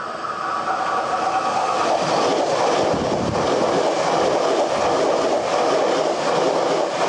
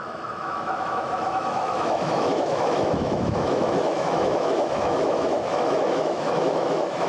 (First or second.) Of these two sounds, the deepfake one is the second